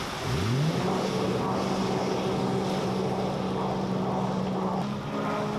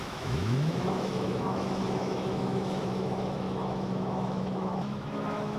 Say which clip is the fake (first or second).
second